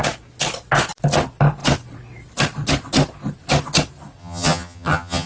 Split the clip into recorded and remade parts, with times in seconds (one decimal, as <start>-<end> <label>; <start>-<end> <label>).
0.0-4.2 recorded; 4.2-5.3 remade